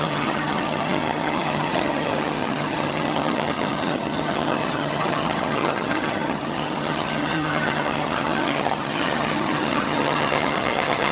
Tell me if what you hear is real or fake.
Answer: fake